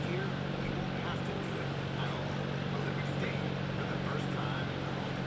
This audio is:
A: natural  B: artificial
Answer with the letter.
A